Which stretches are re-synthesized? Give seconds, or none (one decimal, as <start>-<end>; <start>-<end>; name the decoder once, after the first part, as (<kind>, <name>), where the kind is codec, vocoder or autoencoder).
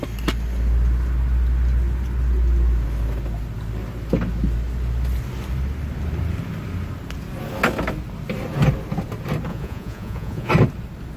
9.5-10.5 (vocoder, Vocos)